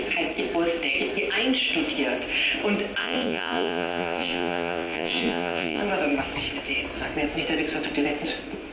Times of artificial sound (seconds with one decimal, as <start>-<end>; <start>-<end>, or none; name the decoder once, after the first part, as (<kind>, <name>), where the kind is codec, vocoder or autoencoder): 3.0-5.8 (vocoder, Vocos)